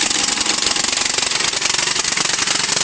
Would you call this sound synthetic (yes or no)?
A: no